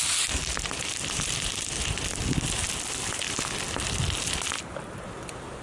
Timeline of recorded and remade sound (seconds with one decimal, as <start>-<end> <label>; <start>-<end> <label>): 0.0-5.6 recorded